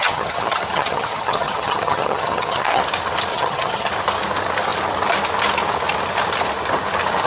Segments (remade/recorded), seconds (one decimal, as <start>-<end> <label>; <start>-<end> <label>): 0.0-2.8 remade; 2.8-3.3 recorded; 3.3-3.9 remade; 3.9-7.3 recorded